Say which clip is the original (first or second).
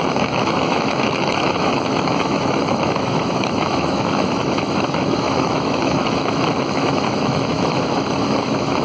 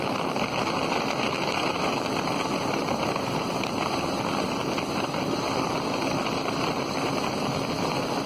second